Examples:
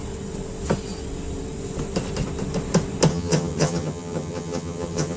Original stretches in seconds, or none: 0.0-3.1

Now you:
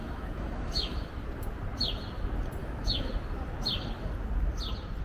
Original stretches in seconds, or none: 1.1-2.6; 3.1-5.0

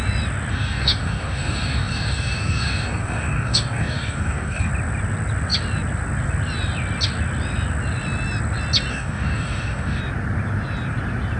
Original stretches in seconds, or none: 0.0-0.5; 4.7-8.9; 10.0-11.4

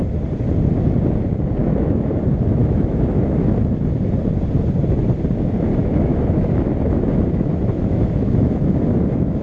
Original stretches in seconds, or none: 0.0-1.6; 2.2-2.6; 3.6-5.8

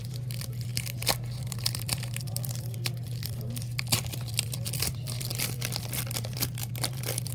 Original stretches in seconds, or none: 0.7-1.4